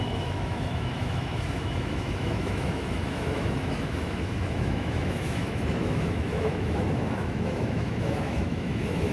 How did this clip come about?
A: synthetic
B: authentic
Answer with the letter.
A